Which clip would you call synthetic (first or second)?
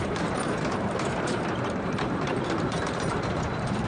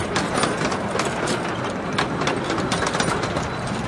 first